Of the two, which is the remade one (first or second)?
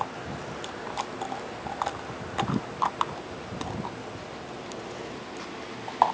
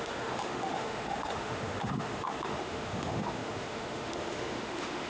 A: second